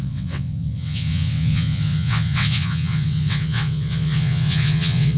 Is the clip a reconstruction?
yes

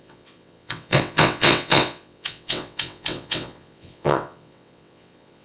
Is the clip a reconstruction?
yes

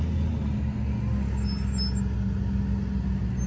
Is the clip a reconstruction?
no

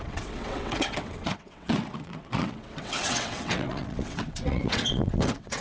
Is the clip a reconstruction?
yes